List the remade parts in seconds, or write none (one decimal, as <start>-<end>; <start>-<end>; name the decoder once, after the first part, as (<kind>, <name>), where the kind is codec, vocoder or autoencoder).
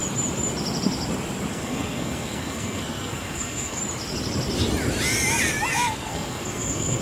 1.5-3.8 (codec, SNAC); 5.7-7.0